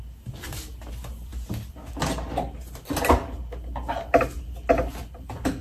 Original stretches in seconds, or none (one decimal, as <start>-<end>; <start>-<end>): 0.0-5.6